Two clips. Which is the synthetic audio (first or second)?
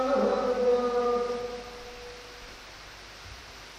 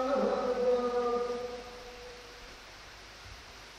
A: second